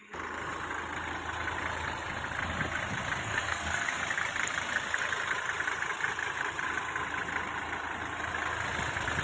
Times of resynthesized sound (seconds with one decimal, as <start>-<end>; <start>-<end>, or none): 3.2-4.0